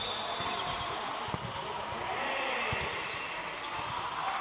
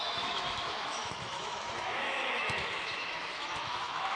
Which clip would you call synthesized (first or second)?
second